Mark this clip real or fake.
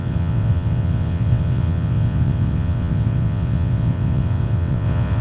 fake